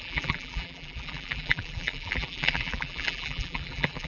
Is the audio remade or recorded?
remade